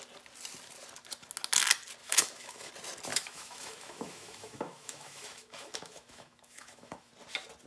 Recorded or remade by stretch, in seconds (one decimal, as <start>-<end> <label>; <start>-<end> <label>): 0.0-2.0 recorded; 2.0-2.7 remade; 2.7-3.1 recorded; 3.1-7.1 remade; 7.1-7.7 recorded